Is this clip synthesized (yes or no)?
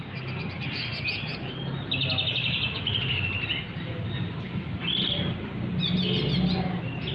no